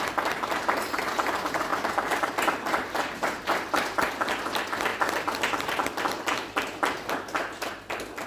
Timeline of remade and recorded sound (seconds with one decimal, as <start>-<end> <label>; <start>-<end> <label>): 0.0-1.7 recorded; 1.7-4.0 remade; 4.0-4.9 recorded; 4.9-7.1 remade; 7.1-8.3 recorded